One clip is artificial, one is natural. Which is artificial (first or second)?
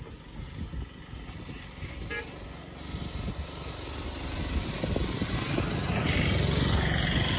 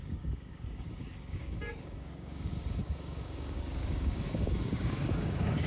second